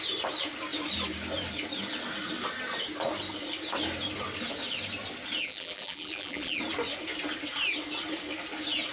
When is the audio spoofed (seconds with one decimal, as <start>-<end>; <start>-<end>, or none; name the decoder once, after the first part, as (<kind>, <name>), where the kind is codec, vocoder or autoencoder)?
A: 5.4-6.6 (vocoder, BigVGAN v2)